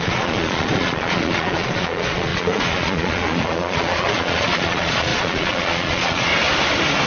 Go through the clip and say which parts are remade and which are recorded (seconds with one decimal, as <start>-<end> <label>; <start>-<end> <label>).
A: 0.0-6.3 remade; 6.3-7.1 recorded